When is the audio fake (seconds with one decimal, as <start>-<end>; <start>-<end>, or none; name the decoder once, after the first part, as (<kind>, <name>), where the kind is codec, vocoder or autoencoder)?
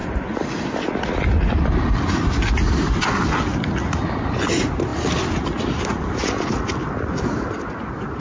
none